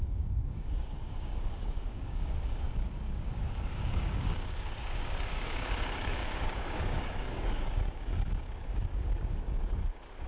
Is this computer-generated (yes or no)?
yes